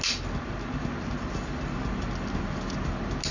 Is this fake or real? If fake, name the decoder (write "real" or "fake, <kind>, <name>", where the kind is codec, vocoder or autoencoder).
real